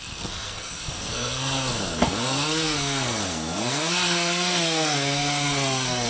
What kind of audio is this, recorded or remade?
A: remade